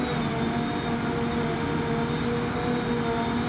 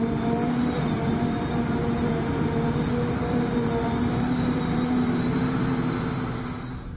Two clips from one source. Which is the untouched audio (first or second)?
first